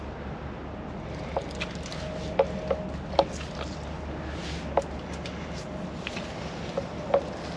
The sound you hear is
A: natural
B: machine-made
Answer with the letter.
A